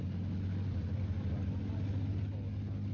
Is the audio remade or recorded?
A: recorded